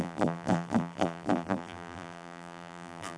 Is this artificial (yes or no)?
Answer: yes